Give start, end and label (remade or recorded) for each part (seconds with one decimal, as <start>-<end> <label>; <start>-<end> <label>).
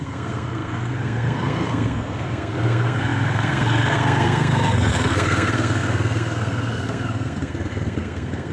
0.0-8.5 remade